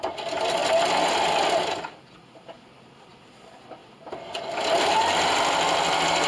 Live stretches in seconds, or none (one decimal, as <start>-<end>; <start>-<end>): 0.0-6.3

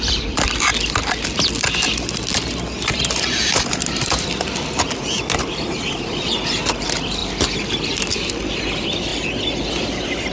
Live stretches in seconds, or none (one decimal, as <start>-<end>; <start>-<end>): 0.0-10.3

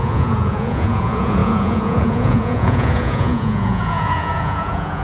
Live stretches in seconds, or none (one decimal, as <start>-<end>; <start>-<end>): none

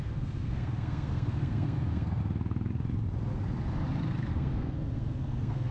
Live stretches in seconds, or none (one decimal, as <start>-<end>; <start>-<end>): 2.2-4.3

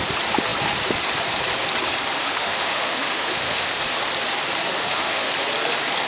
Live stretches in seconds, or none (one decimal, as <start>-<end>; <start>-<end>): 0.0-2.2; 3.8-4.8; 5.3-6.1

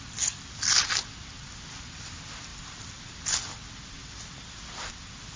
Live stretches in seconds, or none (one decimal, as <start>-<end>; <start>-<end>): 0.0-5.4

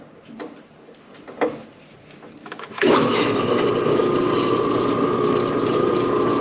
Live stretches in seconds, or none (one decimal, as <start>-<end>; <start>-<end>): 0.0-2.4; 3.4-6.4

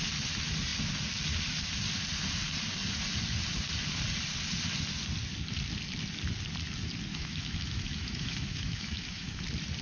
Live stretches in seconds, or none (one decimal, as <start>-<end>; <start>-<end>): 0.0-7.1; 9.4-9.8